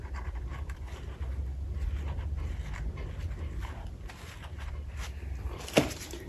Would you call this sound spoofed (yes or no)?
no